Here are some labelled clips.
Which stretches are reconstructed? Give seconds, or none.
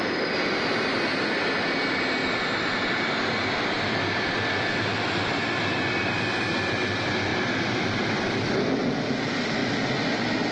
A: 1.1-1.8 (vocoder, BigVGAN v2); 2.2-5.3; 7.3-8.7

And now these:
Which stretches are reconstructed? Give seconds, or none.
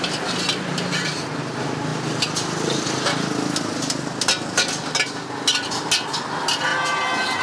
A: none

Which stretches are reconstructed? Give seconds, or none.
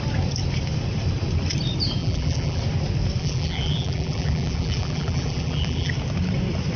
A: 2.0-2.6 (vocoder, BigVGAN v2); 3.2-5.9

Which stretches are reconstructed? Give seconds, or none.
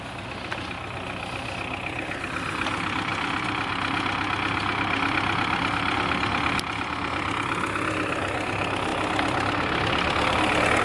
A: none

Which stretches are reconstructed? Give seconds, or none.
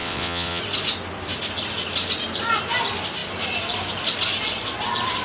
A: 0.0-0.6 (vocoder, WaveNeXt)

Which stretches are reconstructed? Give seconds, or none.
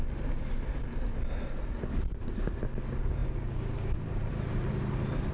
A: none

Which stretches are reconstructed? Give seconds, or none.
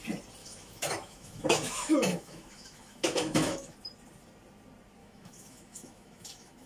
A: 0.4-3.7 (autoencoder, DAC-VAE); 5.0-6.7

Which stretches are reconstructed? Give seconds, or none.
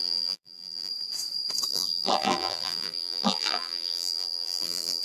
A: 0.0-0.9 (vocoder, BigVGAN v2); 1.7-5.0